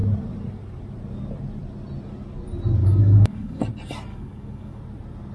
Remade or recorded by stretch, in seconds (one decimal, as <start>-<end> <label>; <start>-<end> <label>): 0.0-2.8 recorded; 2.8-3.6 remade; 3.6-4.1 recorded; 4.1-4.8 remade; 4.8-5.3 recorded